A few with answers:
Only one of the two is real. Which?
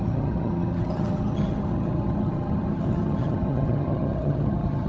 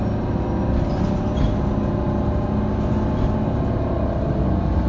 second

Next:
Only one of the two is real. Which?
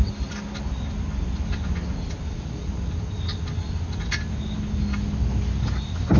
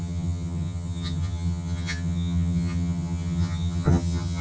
first